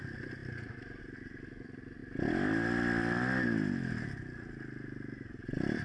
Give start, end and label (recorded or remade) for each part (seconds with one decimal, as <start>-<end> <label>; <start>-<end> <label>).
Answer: 0.0-5.8 recorded